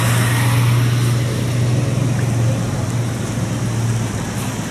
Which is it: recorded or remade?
recorded